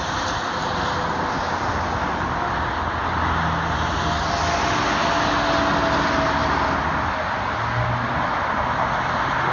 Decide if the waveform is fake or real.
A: real